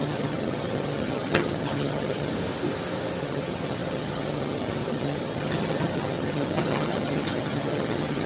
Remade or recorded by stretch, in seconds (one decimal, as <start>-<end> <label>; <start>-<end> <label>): 0.0-2.3 remade; 2.3-3.2 recorded; 3.2-8.3 remade

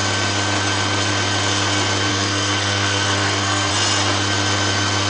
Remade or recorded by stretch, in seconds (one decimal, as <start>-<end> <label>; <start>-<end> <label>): 0.0-2.1 recorded; 2.1-3.7 remade; 3.7-5.1 recorded

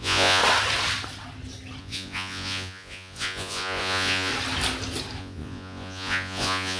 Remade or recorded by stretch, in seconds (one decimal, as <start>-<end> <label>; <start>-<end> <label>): 0.0-0.4 remade; 0.4-1.8 recorded; 1.8-4.3 remade; 4.3-5.2 recorded; 5.2-6.8 remade